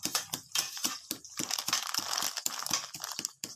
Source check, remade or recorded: recorded